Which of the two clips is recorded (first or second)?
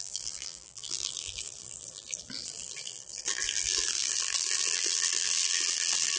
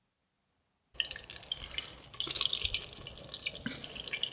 second